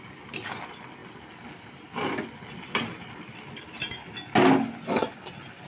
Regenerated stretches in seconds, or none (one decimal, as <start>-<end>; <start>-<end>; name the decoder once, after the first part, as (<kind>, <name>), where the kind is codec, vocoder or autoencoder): none